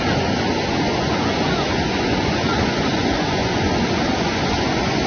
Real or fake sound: fake